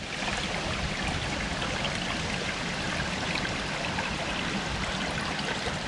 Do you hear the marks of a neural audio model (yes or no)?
no